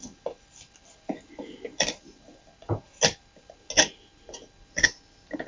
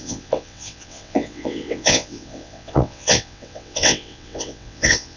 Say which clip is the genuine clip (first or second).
first